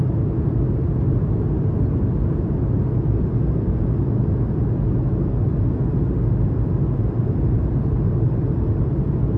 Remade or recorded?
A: recorded